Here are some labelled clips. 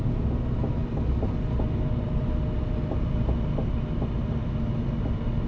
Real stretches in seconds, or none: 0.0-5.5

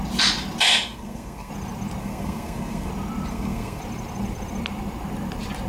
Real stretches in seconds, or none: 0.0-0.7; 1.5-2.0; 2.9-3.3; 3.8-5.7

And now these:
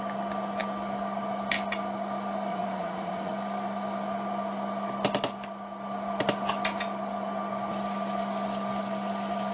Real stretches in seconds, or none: 0.0-2.5; 3.3-9.5